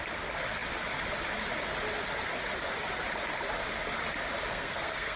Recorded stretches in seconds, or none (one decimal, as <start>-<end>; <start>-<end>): 0.0-4.5